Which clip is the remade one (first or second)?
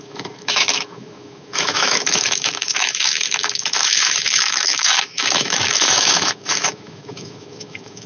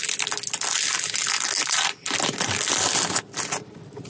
first